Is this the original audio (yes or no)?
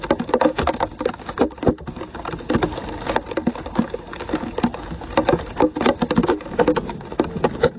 yes